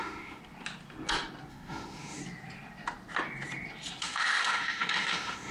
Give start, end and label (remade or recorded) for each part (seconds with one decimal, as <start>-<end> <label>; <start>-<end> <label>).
0.0-0.4 remade; 0.4-1.5 recorded; 1.5-2.2 remade; 2.2-4.0 recorded; 4.0-5.5 remade